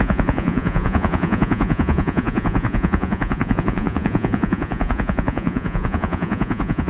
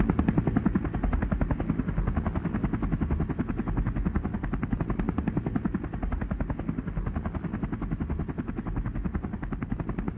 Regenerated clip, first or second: first